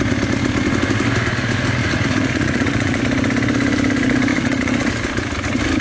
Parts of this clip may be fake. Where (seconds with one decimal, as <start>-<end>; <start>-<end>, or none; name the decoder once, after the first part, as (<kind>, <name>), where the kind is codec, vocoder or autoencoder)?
1.8-3.0 (vocoder, Vocos); 4.3-4.9